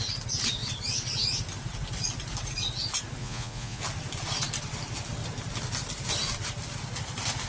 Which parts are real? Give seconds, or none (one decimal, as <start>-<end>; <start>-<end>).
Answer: 0.0-3.2; 3.8-7.5